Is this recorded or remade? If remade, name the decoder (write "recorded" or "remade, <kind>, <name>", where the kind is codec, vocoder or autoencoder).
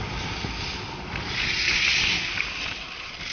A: recorded